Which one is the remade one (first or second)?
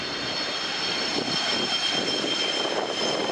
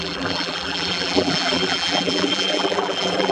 second